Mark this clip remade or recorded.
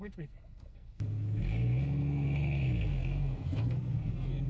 remade